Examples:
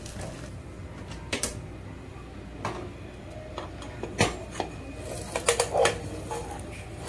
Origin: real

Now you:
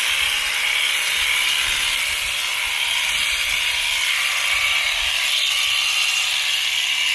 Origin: real